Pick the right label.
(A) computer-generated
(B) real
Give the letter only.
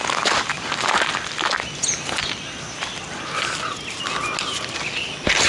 B